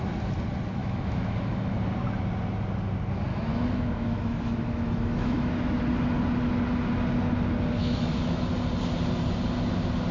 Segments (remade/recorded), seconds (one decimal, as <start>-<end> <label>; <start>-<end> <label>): 0.0-0.8 recorded; 0.8-1.8 remade; 1.8-3.3 recorded; 3.3-5.5 remade; 5.5-7.8 recorded; 7.8-8.5 remade; 8.5-10.1 recorded